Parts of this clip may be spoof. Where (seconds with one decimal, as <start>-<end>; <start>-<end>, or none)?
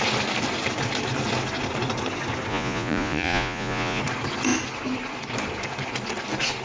2.5-4.0